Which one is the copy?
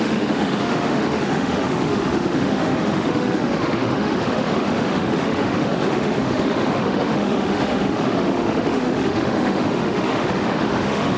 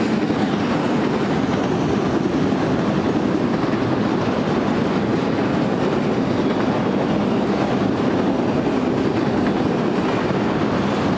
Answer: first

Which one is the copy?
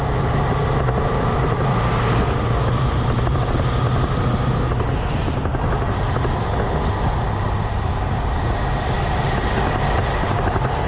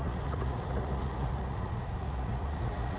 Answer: second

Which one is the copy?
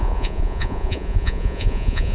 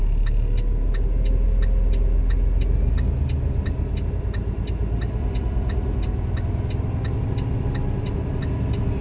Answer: first